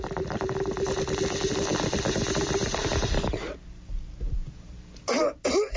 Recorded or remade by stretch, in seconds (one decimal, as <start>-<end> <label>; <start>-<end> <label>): 0.0-5.8 recorded